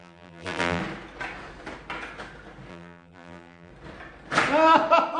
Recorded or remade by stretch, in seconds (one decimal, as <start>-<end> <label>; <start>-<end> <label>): 0.0-0.8 remade; 0.8-2.7 recorded; 2.7-3.7 remade; 3.7-5.2 recorded